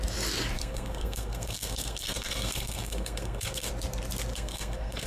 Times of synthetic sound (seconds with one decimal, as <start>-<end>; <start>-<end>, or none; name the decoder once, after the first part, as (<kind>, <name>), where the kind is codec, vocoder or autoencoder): 0.6-3.7 (codec, SNAC); 4.3-5.1